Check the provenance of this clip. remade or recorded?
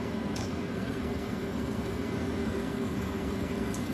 remade